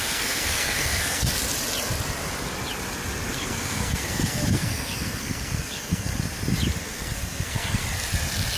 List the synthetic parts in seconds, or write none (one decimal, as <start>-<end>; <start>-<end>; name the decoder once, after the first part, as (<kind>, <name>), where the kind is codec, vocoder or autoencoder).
0.0-1.3 (codec, SNAC); 3.3-6.1; 6.8-7.8